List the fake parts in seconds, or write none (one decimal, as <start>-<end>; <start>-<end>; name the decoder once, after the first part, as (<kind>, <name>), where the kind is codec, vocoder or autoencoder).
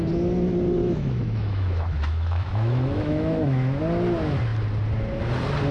0.8-3.8 (autoencoder, DAC-VAE)